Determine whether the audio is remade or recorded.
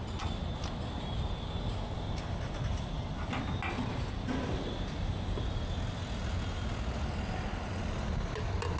recorded